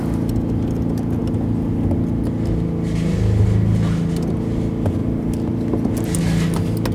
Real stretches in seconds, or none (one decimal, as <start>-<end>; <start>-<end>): 0.0-5.0; 5.5-6.9